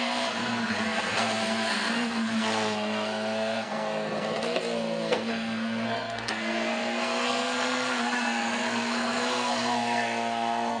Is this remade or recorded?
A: remade